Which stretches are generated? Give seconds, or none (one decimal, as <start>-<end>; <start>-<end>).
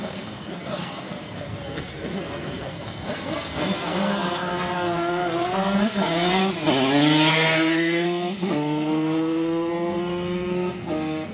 0.0-6.4; 7.3-11.3